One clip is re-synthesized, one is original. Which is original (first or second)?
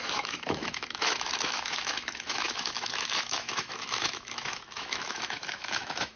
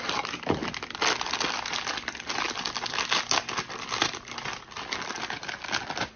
second